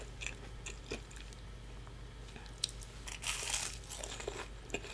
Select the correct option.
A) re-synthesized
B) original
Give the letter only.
B